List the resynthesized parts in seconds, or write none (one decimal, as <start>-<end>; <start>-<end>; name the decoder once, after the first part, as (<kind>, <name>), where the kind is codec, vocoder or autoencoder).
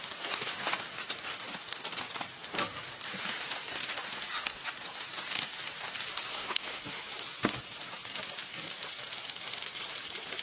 6.3-6.8 (codec, SNAC)